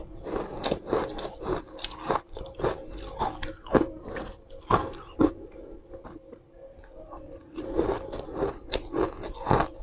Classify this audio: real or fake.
real